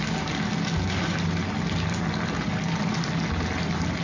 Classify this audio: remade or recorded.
recorded